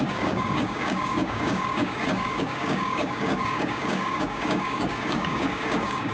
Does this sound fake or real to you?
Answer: fake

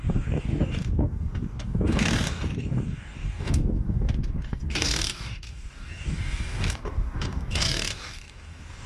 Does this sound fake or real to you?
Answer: fake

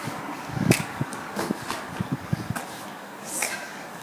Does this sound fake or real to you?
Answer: fake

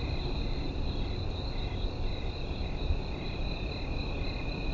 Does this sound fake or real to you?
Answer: real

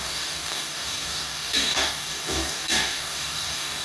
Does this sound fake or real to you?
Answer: fake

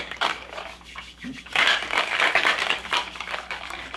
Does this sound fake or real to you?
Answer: fake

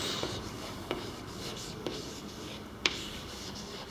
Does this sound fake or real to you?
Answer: fake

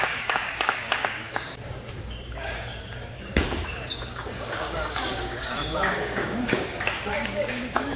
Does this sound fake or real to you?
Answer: fake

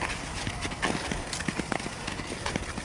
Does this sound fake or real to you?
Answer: real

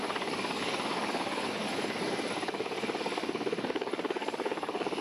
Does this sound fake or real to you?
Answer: fake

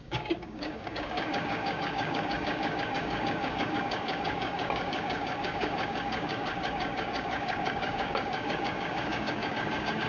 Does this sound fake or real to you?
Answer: fake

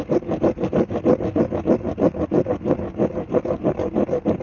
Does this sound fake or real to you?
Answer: real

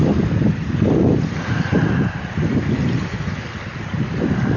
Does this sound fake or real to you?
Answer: real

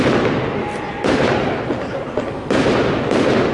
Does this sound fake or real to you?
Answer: real